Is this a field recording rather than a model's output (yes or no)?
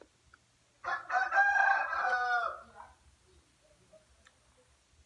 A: yes